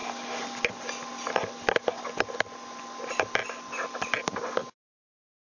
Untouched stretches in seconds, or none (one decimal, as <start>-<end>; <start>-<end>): 0.0-5.5